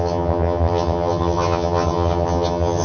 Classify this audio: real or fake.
fake